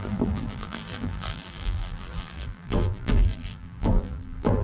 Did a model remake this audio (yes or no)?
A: yes